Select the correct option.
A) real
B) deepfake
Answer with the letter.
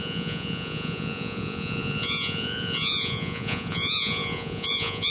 B